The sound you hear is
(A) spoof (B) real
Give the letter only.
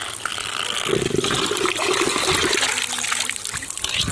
B